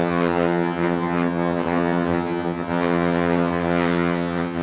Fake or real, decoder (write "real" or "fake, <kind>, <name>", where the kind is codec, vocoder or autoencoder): fake, vocoder, HiFi-GAN